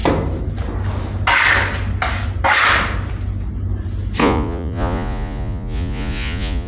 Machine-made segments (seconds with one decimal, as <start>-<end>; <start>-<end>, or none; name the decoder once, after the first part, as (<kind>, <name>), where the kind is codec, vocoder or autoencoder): 4.2-6.7 (vocoder, Vocos)